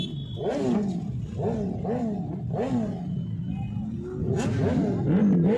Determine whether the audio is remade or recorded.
recorded